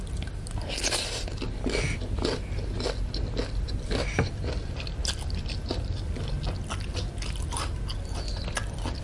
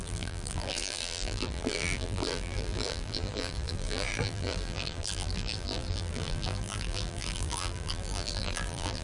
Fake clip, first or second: second